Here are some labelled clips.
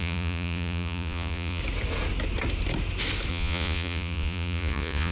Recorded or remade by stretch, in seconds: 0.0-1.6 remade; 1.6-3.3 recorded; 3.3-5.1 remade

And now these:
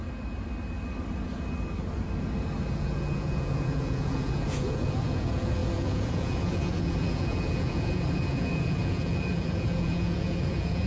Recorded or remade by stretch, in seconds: 0.0-2.7 recorded; 2.7-10.9 remade

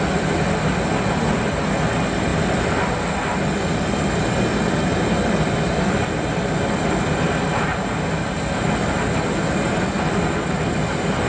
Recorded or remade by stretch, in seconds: 0.0-11.3 recorded

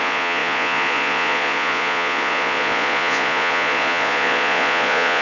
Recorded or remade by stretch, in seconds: 0.0-5.2 remade

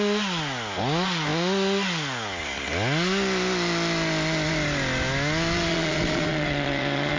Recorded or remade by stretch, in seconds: 0.0-5.7 recorded; 5.7-7.2 remade

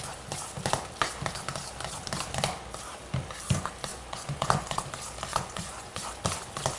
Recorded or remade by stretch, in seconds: 0.0-3.9 recorded; 3.9-4.8 remade; 4.8-5.3 recorded; 5.3-6.0 remade; 6.0-6.8 recorded

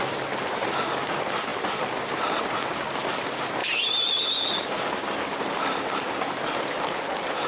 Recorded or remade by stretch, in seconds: 0.0-7.5 recorded

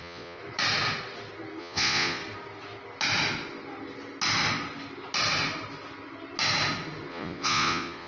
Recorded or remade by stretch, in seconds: 0.0-0.4 remade; 0.4-1.6 recorded; 1.6-2.2 remade; 2.2-7.1 recorded; 7.1-8.1 remade